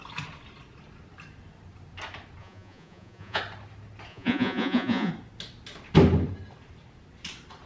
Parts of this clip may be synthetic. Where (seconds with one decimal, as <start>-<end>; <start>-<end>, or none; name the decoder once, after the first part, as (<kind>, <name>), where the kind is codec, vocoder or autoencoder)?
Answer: 2.4-3.4 (vocoder, Vocos); 4.1-5.1